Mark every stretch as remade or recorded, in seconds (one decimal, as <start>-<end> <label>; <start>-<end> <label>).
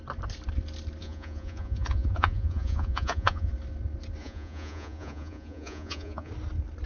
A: 0.0-1.0 recorded; 1.0-3.5 remade; 3.5-4.2 recorded; 4.2-6.3 remade; 6.3-6.9 recorded